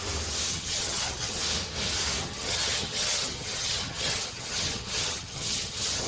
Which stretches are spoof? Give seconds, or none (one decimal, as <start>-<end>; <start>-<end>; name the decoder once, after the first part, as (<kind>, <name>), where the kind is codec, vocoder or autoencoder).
0.5-1.4 (vocoder, HiFi-GAN); 2.2-6.1